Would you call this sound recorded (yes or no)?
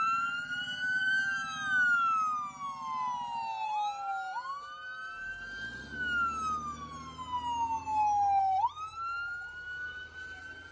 yes